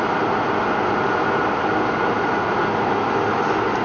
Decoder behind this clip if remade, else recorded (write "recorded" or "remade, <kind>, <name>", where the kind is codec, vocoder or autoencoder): recorded